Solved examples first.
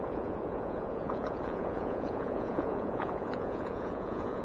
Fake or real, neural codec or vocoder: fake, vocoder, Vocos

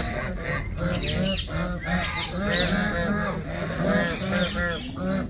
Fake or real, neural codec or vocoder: real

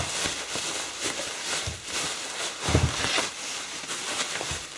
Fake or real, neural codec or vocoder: real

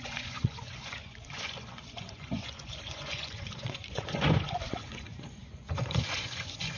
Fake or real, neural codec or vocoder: fake, vocoder, Vocos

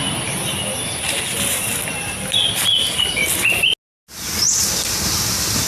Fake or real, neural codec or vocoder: real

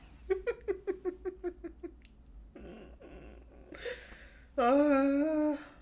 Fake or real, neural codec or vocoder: real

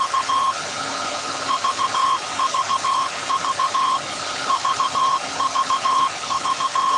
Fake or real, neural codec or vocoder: fake, codec, HILCodec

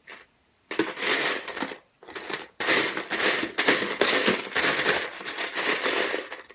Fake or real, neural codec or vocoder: real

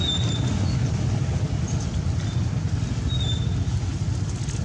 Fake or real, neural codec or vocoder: real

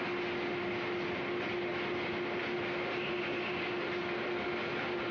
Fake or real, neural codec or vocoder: real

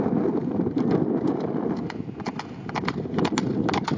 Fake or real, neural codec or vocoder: real